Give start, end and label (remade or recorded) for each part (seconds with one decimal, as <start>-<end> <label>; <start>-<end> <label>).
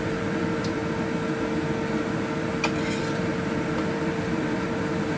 0.0-0.8 remade; 0.8-3.0 recorded; 3.0-5.2 remade